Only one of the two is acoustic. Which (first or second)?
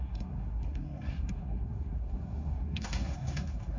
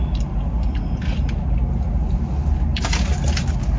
second